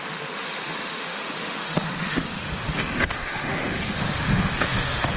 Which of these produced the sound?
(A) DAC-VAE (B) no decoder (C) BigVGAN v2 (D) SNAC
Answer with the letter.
A